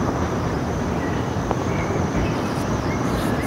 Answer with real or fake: fake